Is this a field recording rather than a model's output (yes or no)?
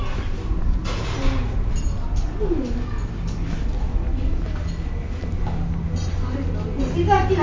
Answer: yes